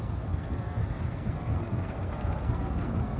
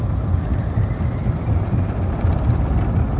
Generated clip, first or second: first